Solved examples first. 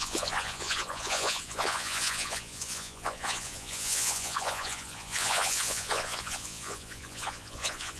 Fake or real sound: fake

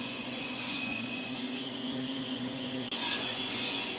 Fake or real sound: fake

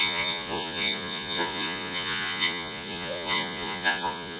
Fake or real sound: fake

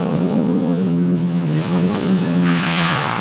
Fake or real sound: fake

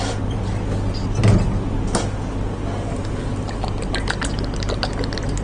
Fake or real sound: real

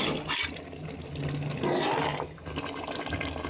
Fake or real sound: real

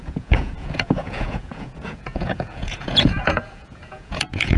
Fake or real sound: fake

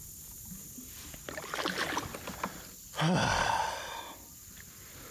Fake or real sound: real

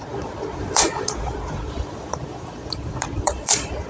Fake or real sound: fake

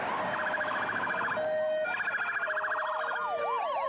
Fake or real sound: real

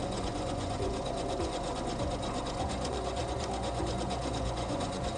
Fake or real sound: fake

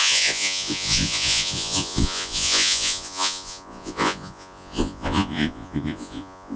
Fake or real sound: fake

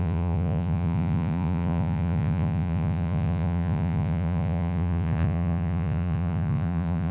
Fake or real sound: fake